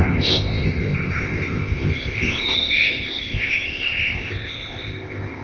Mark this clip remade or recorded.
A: remade